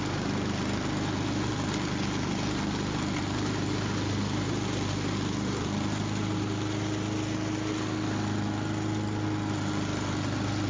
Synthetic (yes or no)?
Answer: no